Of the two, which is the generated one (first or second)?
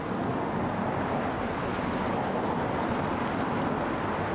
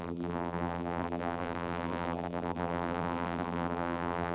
second